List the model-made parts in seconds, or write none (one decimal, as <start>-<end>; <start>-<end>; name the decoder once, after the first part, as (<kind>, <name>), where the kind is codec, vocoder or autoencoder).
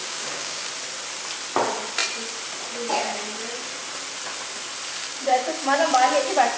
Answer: 0.0-0.7 (codec, DAC); 5.1-5.9